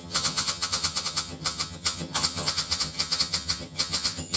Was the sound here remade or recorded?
remade